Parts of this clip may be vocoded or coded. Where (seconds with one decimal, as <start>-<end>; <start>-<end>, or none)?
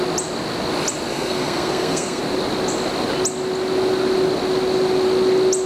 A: 1.1-2.2